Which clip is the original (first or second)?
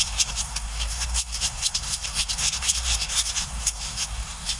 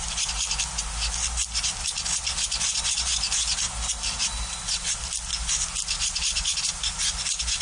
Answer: second